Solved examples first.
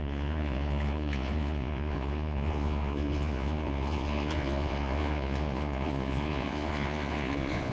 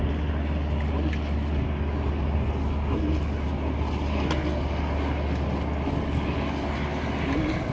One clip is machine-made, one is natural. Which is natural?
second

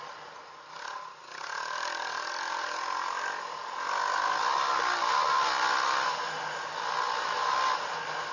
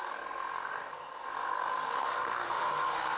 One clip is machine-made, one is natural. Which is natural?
first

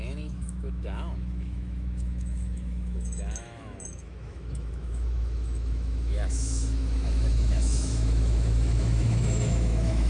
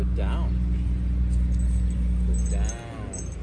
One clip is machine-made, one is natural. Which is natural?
second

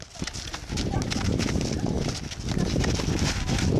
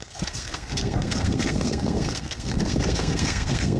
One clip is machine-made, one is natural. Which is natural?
first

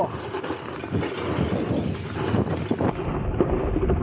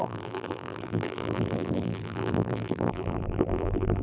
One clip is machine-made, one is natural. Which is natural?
first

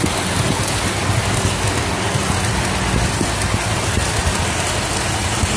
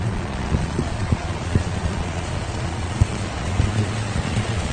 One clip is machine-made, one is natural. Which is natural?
first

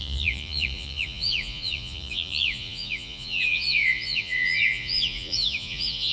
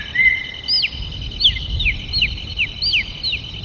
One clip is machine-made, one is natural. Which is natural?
second